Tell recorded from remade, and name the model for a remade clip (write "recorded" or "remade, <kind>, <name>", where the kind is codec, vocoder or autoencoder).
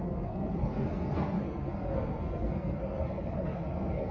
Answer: remade, codec, SNAC